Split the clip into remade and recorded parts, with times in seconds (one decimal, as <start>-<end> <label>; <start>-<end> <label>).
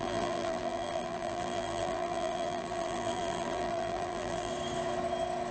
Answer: 0.0-4.5 remade; 4.5-5.5 recorded